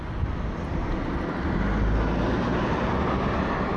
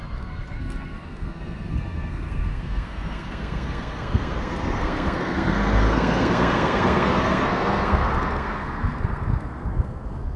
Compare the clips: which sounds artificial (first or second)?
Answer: second